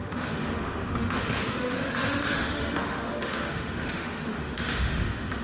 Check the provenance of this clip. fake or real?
fake